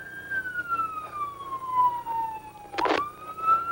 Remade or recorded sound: remade